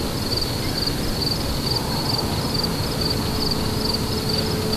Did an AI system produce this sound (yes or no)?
no